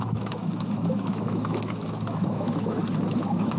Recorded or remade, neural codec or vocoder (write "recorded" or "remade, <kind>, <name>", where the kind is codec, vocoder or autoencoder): remade, autoencoder, DAC-VAE